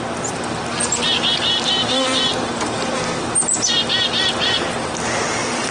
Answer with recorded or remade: recorded